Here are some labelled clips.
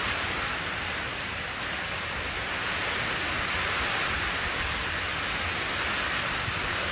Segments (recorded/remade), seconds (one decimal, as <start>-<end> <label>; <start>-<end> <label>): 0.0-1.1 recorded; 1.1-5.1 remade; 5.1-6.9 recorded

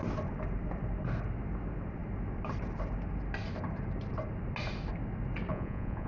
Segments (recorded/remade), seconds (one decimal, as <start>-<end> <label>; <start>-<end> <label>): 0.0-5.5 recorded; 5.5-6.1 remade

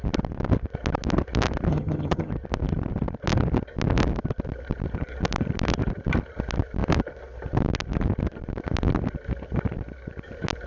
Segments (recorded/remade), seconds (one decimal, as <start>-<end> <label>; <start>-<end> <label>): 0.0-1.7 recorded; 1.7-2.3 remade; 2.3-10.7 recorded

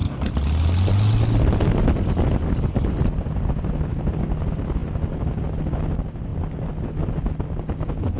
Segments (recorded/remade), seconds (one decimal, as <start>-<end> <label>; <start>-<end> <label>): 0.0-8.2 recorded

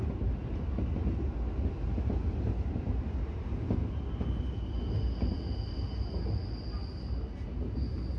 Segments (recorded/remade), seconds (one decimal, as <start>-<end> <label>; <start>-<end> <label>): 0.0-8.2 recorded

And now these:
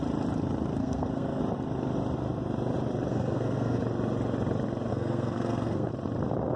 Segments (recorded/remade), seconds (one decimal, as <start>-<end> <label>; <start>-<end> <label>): 0.0-0.8 recorded; 0.8-1.4 remade; 1.4-3.1 recorded; 3.1-3.8 remade; 3.8-4.9 recorded; 4.9-5.9 remade; 5.9-6.6 recorded